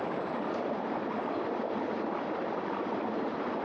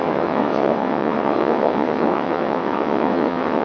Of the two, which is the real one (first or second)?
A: first